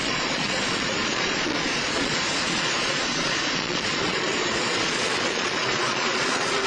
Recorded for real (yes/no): no